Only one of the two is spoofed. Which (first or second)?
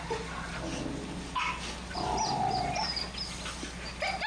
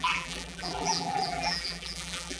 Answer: second